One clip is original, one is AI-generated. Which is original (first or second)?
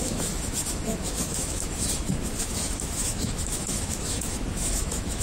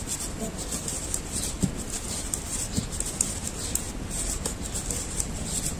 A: second